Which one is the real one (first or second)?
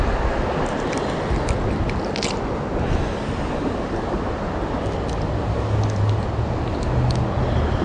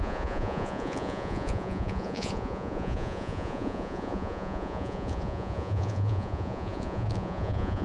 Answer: first